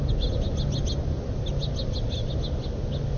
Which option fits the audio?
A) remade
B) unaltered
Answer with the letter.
B